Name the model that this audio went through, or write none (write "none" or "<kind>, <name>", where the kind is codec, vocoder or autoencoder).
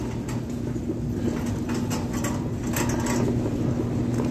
none